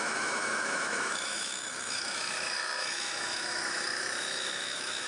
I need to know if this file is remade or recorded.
remade